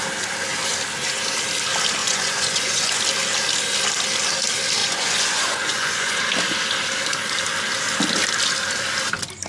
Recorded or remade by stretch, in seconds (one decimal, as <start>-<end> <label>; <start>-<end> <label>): 0.0-2.0 recorded; 2.0-3.0 remade; 3.0-4.8 recorded; 4.8-6.2 remade; 6.2-9.5 recorded